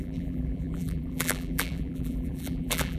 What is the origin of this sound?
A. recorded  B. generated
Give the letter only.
B